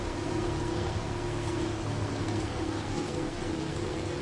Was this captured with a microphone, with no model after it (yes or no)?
no